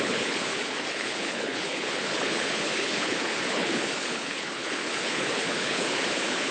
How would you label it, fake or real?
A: fake